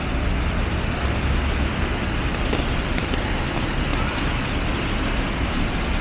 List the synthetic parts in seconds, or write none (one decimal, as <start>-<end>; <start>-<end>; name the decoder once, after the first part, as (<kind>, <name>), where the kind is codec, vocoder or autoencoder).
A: none